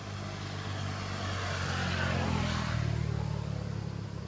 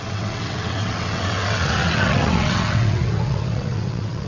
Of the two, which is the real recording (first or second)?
first